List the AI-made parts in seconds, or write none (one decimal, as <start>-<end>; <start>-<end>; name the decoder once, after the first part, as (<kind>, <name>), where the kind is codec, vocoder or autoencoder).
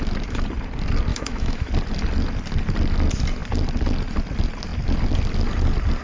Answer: 1.1-1.7 (autoencoder, DAC-VAE)